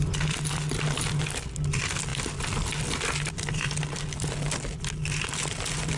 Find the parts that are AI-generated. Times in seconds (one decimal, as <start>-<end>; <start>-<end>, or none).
none

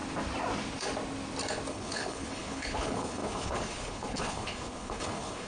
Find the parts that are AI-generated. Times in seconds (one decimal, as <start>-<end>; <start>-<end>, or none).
1.7-5.5

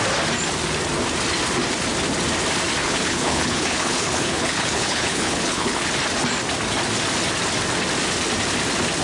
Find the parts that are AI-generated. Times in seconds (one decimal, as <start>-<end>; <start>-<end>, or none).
2.8-5.9

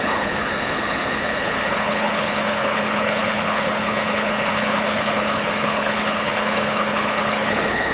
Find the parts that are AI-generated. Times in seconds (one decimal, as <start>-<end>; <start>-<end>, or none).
0.0-7.9

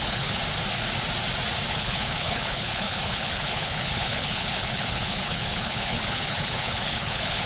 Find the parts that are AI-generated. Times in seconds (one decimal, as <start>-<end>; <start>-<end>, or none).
0.0-0.4; 1.7-7.5